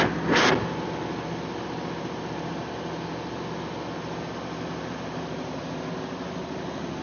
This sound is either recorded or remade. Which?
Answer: recorded